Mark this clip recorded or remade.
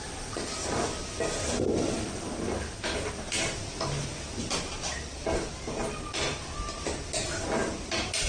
recorded